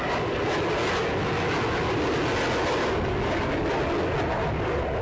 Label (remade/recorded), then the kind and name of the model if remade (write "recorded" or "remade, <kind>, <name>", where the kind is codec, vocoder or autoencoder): recorded